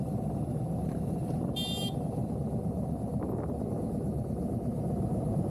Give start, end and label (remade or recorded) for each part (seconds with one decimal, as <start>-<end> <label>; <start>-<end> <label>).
0.0-5.5 recorded